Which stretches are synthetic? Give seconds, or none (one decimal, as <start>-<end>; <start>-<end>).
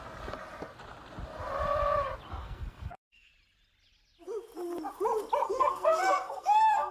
2.4-3.3; 5.4-6.9